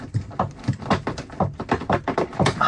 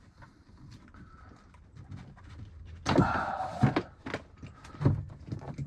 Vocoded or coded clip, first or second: second